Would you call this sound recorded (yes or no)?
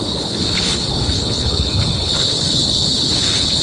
no